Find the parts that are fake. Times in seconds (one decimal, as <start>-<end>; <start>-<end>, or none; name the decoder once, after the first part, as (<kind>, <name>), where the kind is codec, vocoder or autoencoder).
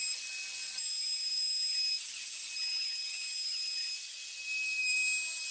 none